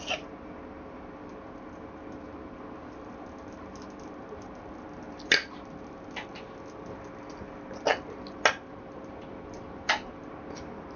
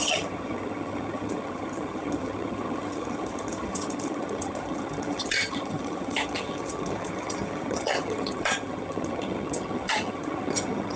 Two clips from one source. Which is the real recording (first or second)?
first